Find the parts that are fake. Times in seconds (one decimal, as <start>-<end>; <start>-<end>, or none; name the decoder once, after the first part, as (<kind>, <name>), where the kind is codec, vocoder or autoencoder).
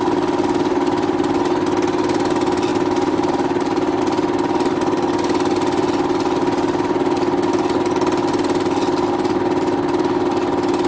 2.7-4.0 (vocoder, BigVGAN v2)